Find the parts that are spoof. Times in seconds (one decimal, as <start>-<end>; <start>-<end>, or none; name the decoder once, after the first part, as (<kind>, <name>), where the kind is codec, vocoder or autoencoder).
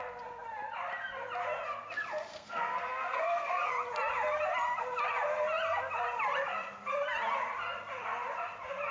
2.3-3.7 (codec, SNAC)